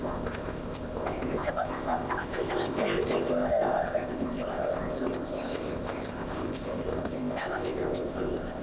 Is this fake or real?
fake